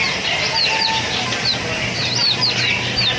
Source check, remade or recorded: recorded